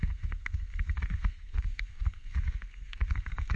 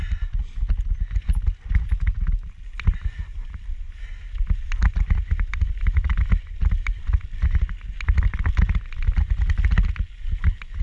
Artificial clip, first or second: first